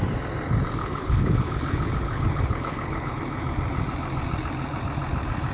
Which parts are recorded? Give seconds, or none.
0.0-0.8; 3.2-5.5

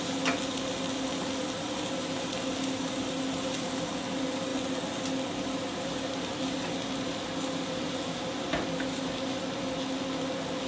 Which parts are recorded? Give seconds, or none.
0.0-10.7